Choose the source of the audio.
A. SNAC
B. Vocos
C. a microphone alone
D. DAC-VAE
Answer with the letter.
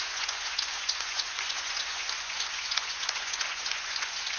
B